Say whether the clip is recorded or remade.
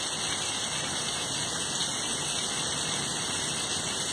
recorded